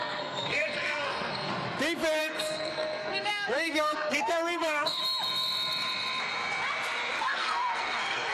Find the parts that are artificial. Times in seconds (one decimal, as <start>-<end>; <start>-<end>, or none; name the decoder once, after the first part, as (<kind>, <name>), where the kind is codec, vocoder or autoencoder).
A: 0.0-1.5 (codec, SNAC); 2.2-5.0; 7.2-8.3